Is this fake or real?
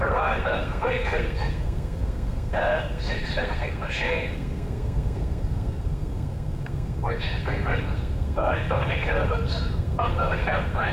fake